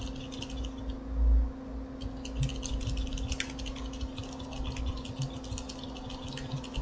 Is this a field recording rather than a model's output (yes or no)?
yes